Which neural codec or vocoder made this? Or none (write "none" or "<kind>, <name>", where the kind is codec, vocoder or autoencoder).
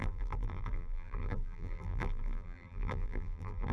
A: vocoder, BigVGAN v2